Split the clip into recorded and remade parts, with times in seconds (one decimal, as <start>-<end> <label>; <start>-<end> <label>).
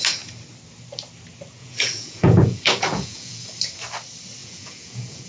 0.0-1.6 recorded; 1.6-3.5 remade; 3.5-4.4 recorded; 4.4-5.3 remade